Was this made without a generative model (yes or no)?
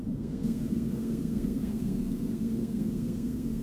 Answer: no